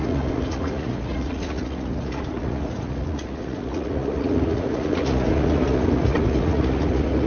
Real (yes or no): no